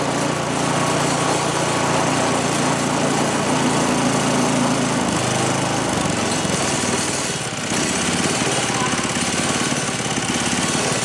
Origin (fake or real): real